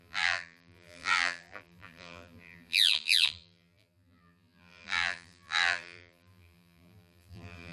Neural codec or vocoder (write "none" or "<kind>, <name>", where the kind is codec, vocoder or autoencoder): vocoder, BigVGAN v2